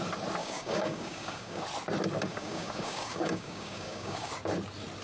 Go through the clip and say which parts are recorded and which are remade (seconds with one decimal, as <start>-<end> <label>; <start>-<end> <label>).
0.0-0.4 recorded; 0.4-1.6 remade; 1.6-2.3 recorded; 2.3-4.3 remade; 4.3-5.0 recorded